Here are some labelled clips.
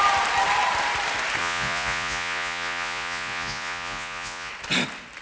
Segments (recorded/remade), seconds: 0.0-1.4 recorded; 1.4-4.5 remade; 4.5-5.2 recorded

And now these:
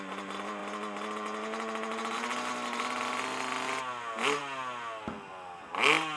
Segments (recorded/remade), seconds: 0.0-6.2 recorded

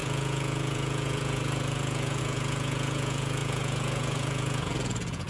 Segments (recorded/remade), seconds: 0.0-5.3 remade

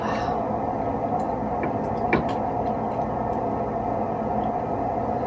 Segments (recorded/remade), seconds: 0.0-5.3 recorded

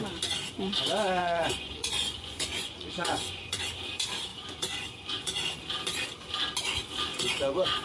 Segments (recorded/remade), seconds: 0.0-1.2 recorded; 1.2-3.6 remade; 3.6-4.3 recorded; 4.3-5.6 remade; 5.6-7.1 recorded; 7.1-7.8 remade

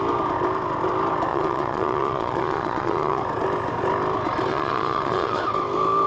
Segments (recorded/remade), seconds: 0.0-1.3 recorded; 1.3-3.2 remade; 3.2-4.5 recorded; 4.5-5.4 remade; 5.4-6.1 recorded